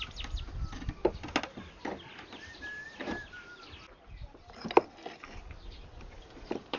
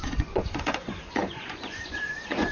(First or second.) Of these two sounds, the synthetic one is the second